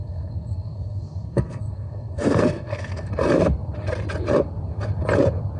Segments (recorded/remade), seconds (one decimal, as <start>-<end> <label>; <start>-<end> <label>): 0.0-3.1 remade; 3.1-5.6 recorded